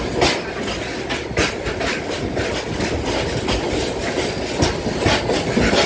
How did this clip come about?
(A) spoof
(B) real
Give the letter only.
B